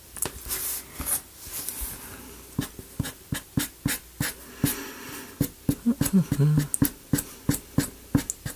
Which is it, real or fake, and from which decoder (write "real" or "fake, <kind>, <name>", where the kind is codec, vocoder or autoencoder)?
real